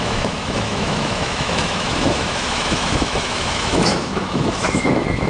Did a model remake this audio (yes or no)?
yes